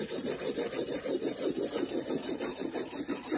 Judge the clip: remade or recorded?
remade